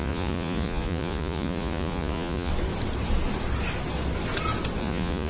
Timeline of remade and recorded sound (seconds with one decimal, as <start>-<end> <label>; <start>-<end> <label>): 0.0-2.5 remade; 2.5-4.8 recorded; 4.8-5.3 remade